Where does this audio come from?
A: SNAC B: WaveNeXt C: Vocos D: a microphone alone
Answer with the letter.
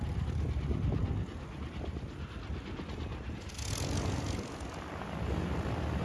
D